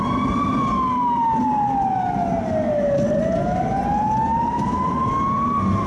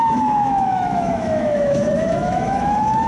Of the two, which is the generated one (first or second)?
second